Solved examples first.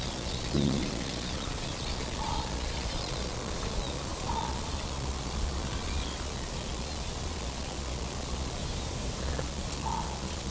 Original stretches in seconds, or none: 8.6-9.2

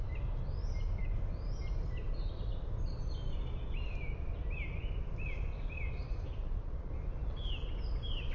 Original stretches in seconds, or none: 0.0-6.4; 6.9-8.3